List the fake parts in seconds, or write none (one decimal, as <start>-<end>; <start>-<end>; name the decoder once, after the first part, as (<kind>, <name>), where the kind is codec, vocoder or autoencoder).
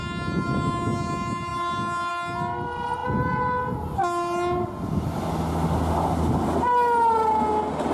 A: none